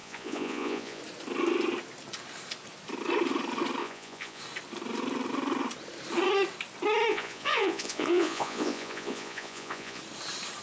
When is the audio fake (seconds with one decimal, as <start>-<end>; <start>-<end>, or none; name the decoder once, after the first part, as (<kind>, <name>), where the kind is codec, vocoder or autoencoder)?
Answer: 0.0-1.0 (vocoder, Vocos); 3.8-4.4; 7.1-10.0